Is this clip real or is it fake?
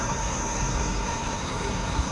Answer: fake